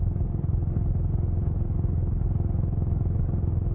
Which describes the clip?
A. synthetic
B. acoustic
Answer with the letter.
B